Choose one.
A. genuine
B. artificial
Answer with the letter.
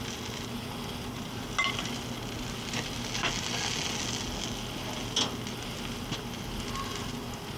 A